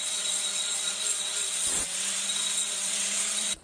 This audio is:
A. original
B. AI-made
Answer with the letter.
B